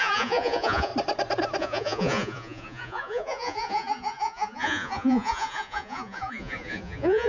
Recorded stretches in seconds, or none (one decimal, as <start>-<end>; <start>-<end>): 0.9-1.6